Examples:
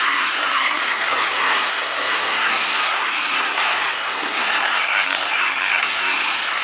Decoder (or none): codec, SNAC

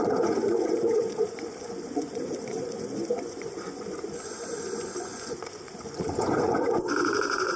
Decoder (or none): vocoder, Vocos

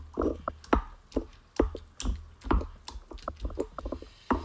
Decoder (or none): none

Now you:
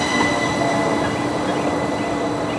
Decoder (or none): none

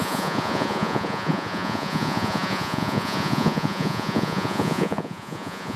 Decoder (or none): vocoder, Vocos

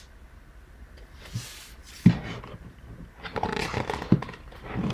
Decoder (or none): none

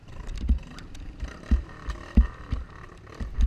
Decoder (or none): none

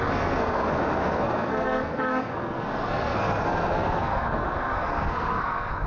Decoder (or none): codec, SNAC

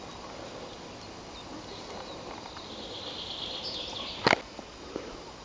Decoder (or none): none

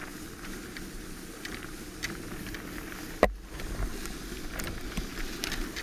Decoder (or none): none